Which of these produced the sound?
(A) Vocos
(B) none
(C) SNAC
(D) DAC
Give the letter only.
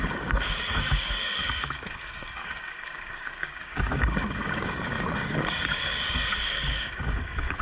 D